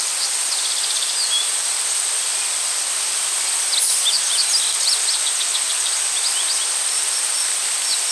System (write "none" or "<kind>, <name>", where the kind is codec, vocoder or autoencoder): none